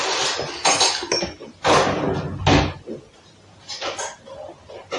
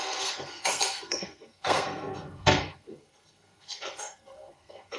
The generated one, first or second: second